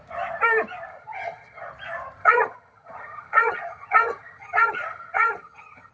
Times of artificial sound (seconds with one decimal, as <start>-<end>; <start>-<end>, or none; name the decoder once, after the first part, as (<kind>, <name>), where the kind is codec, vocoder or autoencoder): 0.9-1.7 (vocoder, HiFi-GAN); 2.2-5.9